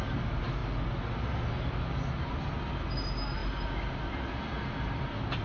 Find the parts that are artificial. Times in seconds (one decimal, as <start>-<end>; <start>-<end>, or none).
none